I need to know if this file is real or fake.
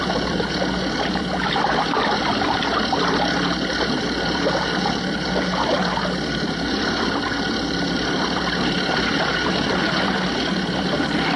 fake